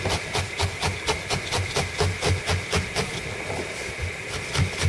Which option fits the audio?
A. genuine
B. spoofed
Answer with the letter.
A